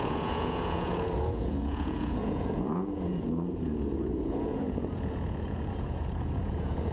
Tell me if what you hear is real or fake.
fake